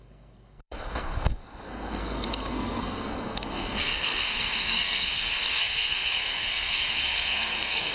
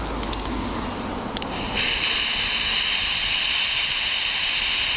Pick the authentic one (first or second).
second